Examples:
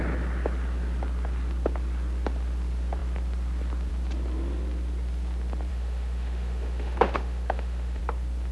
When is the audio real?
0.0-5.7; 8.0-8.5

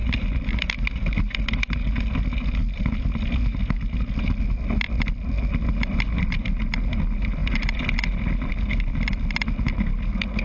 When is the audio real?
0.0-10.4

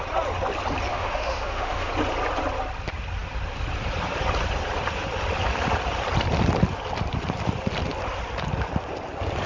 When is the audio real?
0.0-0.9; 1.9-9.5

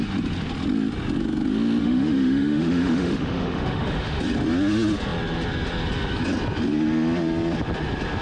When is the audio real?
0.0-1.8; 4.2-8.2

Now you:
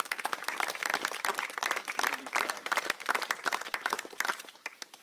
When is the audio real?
none

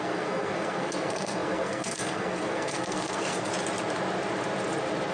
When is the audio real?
3.5-5.1